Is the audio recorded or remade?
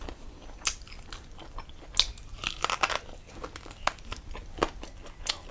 recorded